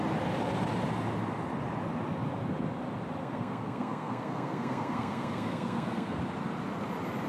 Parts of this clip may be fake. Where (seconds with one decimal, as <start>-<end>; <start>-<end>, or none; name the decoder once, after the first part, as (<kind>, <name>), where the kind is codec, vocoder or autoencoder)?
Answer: 3.2-6.2 (codec, SNAC)